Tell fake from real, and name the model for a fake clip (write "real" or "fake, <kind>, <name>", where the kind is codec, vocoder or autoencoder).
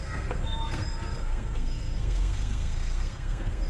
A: fake, codec, SNAC